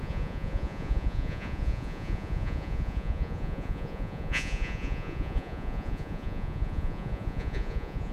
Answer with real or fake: fake